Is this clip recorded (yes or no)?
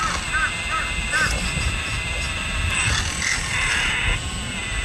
yes